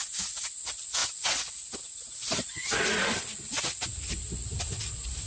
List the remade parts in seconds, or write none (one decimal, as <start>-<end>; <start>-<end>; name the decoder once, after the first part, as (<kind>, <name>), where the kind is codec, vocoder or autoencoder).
none